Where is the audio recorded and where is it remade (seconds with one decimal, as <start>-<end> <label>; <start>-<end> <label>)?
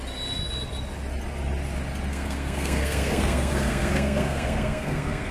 0.0-2.1 recorded; 2.1-5.3 remade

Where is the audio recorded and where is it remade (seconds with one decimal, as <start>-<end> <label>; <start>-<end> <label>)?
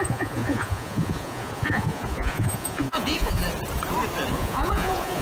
0.0-3.4 remade; 3.4-4.3 recorded; 4.3-5.2 remade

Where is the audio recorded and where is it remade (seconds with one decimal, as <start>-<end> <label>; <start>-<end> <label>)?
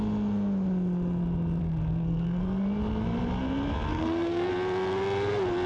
0.0-1.6 recorded; 1.6-2.4 remade; 2.4-3.9 recorded; 3.9-4.5 remade; 4.5-5.7 recorded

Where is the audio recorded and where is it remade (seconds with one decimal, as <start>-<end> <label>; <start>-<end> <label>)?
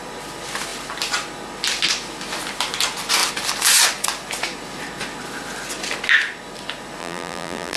0.0-7.0 recorded; 7.0-7.8 remade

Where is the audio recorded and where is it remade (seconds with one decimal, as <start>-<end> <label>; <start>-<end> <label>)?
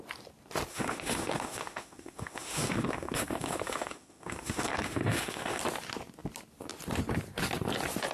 0.0-0.7 recorded; 0.7-5.6 remade; 5.6-8.1 recorded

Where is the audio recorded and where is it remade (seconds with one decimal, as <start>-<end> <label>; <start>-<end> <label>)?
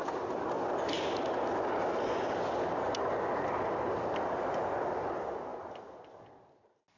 0.0-7.0 recorded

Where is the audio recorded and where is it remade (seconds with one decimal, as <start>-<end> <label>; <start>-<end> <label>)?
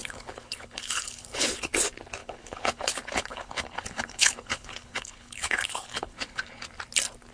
0.0-1.7 remade; 1.7-2.2 recorded; 2.2-6.6 remade; 6.6-7.3 recorded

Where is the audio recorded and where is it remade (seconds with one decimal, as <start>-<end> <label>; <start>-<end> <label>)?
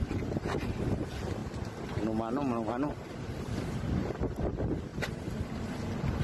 0.0-6.2 recorded